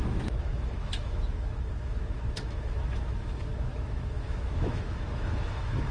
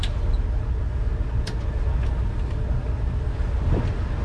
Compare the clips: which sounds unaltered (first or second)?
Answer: second